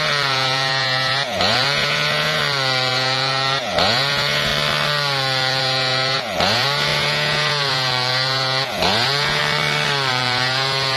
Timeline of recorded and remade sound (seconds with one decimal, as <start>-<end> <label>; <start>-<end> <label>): 0.0-2.4 remade; 2.4-2.9 recorded; 2.9-4.5 remade; 4.5-5.6 recorded; 5.6-9.4 remade; 9.4-10.1 recorded; 10.1-11.0 remade